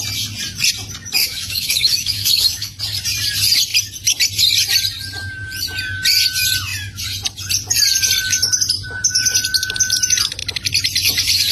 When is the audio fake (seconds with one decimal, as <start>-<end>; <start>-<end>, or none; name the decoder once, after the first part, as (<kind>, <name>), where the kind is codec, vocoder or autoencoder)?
1.2-2.8 (autoencoder, DAC-VAE)